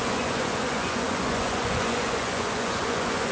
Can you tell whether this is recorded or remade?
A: remade